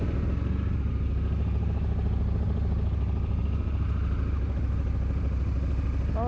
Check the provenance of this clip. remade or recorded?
recorded